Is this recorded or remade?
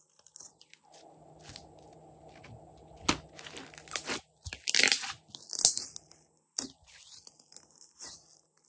recorded